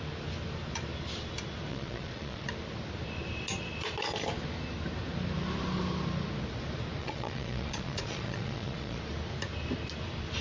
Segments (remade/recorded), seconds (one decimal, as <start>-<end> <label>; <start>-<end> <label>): 0.0-1.7 recorded; 1.7-2.5 remade; 2.5-7.0 recorded; 7.0-9.0 remade; 9.0-10.4 recorded